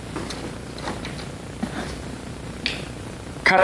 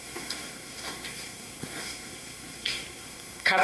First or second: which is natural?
first